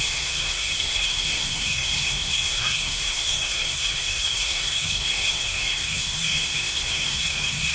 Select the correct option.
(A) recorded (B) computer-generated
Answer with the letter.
B